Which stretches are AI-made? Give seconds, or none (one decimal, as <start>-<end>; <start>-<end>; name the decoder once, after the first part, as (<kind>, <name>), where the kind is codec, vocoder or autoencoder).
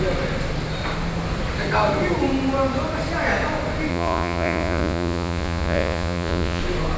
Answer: 3.9-6.6 (vocoder, Vocos)